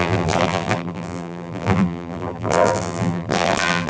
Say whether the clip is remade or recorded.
remade